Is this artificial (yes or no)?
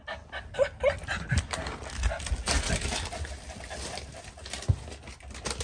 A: no